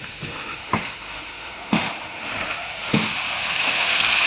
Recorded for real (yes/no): no